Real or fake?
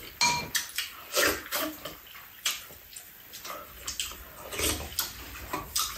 real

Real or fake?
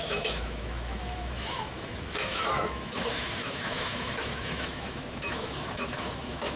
fake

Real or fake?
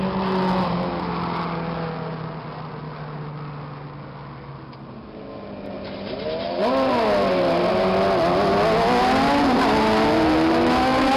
real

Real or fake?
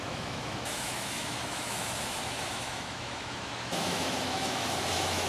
fake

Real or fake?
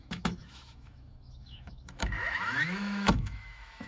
fake